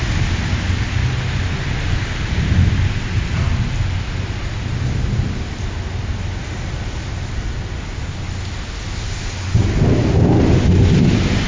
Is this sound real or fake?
real